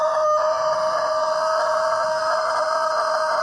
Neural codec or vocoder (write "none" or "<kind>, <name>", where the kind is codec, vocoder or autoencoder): none